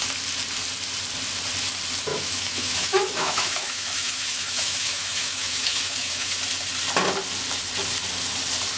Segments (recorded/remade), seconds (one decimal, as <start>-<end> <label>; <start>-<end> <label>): 0.0-2.1 recorded; 2.1-6.3 remade; 6.3-8.8 recorded